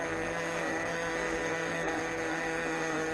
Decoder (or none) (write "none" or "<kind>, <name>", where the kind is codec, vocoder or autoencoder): codec, SNAC